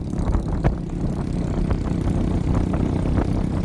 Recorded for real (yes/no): yes